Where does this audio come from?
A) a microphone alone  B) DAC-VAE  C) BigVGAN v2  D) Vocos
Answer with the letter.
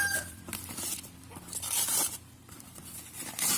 C